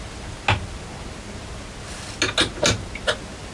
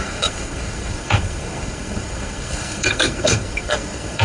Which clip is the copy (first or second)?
second